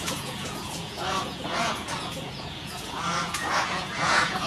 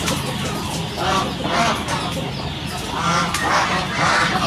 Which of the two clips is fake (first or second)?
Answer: first